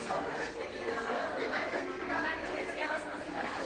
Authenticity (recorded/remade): remade